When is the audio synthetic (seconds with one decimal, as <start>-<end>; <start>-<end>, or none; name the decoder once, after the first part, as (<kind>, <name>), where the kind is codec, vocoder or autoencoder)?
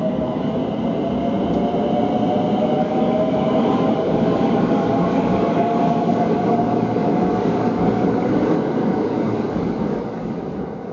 0.0-0.6 (codec, DAC); 2.6-10.9